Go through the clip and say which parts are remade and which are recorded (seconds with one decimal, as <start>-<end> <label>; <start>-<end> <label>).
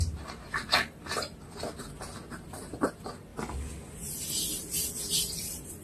0.0-1.4 remade; 1.4-2.2 recorded; 2.2-3.3 remade; 3.3-4.1 recorded; 4.1-5.8 remade